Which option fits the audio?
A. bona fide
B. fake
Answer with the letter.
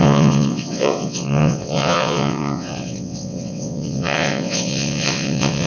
B